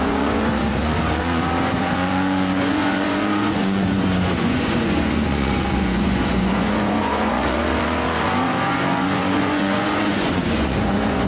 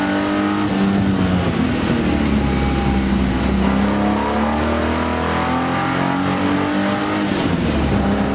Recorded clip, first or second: second